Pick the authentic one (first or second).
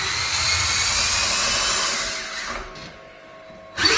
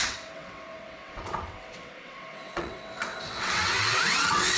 first